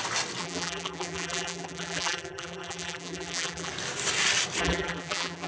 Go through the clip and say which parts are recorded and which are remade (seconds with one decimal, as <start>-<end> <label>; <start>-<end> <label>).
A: 0.0-0.4 recorded; 0.4-3.7 remade; 3.7-4.6 recorded; 4.6-5.5 remade